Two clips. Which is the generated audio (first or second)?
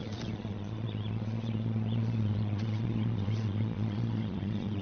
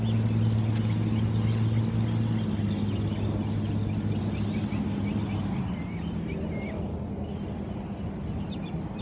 first